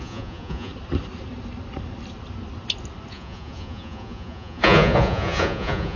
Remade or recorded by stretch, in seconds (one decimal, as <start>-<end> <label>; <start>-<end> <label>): 0.0-0.7 remade; 0.7-3.1 recorded; 3.1-6.0 remade